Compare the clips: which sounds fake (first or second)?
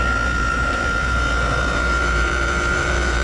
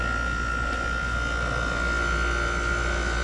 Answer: first